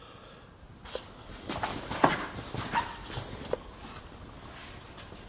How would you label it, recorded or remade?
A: recorded